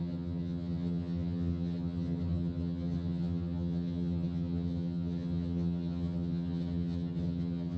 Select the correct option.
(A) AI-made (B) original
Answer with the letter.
A